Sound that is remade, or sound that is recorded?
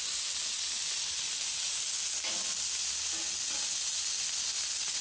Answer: recorded